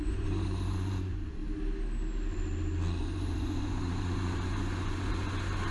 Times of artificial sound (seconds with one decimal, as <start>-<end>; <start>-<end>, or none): 0.0-1.4; 3.0-5.7